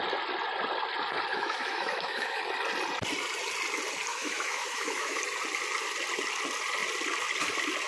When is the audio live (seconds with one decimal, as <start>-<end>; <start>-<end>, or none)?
0.0-1.3; 2.4-4.1; 5.2-7.9